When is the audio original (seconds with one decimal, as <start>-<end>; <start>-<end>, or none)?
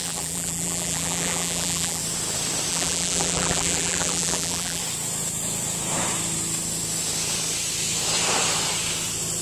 2.0-2.7; 4.8-9.4